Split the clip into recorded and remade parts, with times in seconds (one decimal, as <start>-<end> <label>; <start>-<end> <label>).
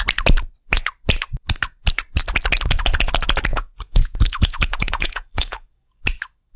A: 0.0-3.5 recorded; 3.5-6.0 remade; 6.0-6.6 recorded